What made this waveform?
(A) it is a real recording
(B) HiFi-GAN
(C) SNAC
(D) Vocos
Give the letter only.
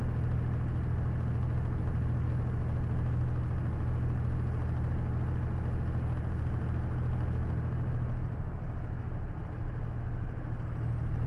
A